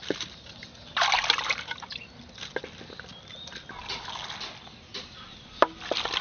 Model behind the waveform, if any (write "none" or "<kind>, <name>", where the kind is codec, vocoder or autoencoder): none